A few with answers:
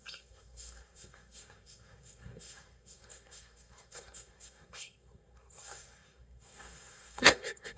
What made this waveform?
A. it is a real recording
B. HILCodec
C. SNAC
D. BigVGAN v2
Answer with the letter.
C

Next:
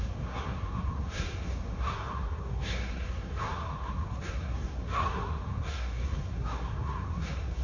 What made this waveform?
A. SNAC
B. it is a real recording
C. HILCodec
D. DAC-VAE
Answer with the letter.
A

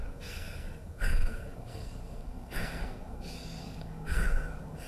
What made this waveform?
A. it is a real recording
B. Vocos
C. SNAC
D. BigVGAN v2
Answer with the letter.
C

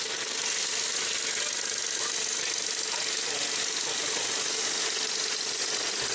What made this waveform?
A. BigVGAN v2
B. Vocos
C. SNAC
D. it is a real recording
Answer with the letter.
D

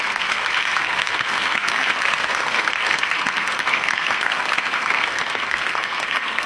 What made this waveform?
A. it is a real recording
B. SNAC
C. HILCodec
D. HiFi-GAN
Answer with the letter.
B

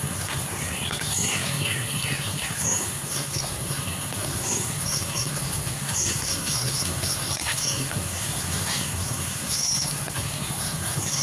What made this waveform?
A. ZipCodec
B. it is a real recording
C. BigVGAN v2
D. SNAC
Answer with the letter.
D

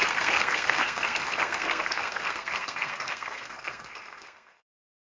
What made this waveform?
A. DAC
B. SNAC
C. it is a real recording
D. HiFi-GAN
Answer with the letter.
B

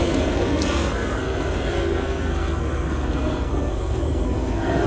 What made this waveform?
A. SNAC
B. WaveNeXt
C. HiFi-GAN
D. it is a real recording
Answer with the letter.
A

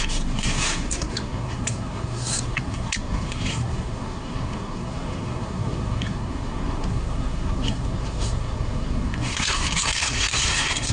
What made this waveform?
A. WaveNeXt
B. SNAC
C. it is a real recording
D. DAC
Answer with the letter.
B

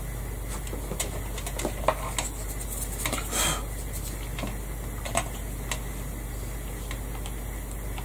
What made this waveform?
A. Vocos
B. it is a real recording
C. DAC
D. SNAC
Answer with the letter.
B